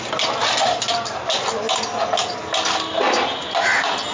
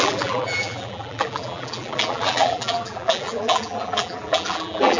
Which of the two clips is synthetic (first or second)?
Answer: second